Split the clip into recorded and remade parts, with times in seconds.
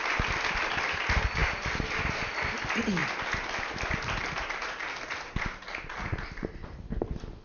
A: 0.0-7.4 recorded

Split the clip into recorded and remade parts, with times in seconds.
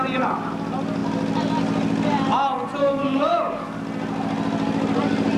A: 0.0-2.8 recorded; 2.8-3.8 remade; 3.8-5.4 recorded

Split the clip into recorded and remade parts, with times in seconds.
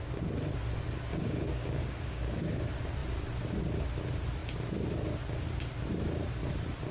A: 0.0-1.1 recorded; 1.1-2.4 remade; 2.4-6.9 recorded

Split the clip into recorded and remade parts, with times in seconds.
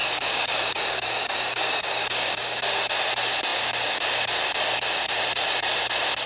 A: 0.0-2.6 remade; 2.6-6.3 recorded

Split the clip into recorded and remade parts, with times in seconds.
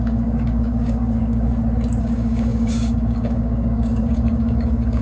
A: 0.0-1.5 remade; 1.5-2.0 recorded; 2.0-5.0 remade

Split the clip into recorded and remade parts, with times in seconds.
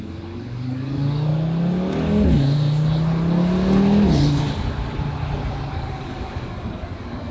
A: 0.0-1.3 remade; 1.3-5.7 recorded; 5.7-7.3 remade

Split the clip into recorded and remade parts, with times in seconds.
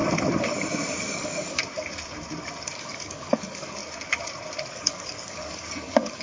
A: 0.0-0.9 recorded; 0.9-1.6 remade; 1.6-2.8 recorded; 2.8-3.8 remade; 3.8-4.7 recorded; 4.7-6.2 remade